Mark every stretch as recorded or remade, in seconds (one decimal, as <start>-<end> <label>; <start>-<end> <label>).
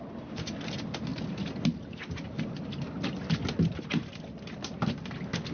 0.0-5.5 recorded